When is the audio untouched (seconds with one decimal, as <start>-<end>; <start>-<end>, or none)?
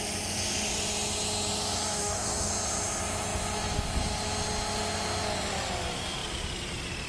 0.0-1.9; 2.5-7.1